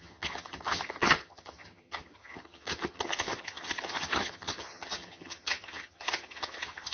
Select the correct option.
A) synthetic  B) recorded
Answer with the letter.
A